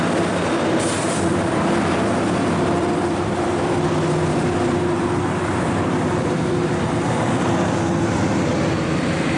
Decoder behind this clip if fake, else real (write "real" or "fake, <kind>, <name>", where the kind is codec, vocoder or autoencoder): fake, vocoder, BigVGAN v2